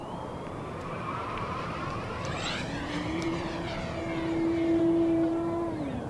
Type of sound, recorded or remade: remade